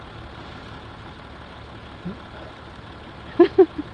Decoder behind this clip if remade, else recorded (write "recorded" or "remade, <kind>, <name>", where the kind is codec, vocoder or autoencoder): recorded